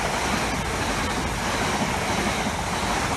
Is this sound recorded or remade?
recorded